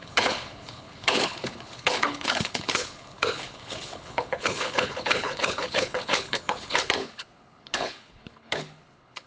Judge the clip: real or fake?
fake